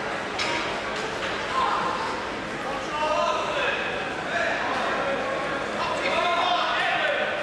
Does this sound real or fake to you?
real